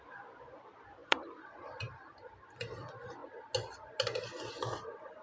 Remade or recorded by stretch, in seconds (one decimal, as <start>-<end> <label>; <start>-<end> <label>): 0.0-1.0 recorded; 1.0-1.6 remade; 1.6-5.2 recorded